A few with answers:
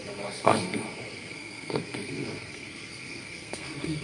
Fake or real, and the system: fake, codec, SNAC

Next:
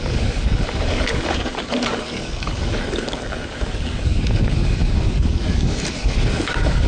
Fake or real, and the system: fake, codec, DAC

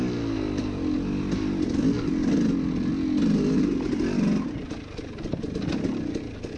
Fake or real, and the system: real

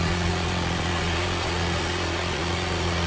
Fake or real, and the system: fake, vocoder, Vocos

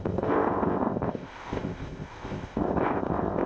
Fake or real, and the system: fake, codec, ZipCodec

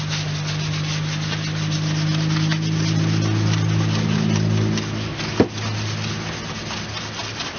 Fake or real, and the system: real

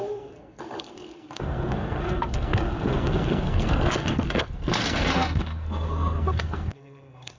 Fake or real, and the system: fake, codec, SNAC